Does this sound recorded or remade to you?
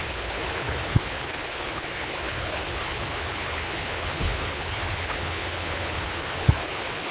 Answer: remade